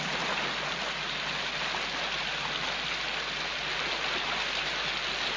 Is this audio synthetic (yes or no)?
no